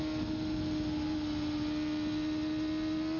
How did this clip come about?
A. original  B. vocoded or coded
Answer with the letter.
A